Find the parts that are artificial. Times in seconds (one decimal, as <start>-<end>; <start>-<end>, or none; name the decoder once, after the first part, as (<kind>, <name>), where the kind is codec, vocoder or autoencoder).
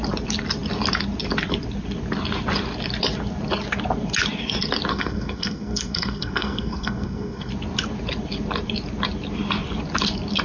4.9-7.5 (codec, SNAC)